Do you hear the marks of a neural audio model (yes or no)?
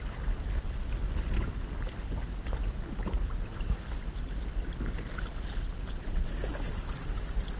no